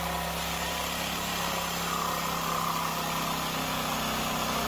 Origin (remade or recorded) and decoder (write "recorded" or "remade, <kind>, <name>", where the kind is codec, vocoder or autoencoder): recorded